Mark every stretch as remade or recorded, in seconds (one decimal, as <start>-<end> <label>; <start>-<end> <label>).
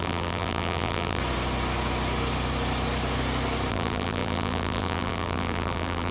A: 0.0-1.2 remade; 1.2-3.7 recorded; 3.7-6.1 remade